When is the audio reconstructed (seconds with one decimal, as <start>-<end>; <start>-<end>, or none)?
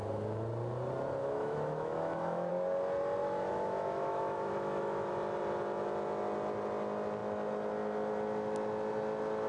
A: 1.2-2.5; 3.2-5.1